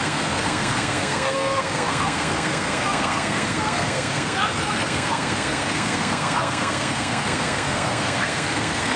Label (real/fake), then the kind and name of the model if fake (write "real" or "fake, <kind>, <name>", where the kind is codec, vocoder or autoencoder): fake, codec, SNAC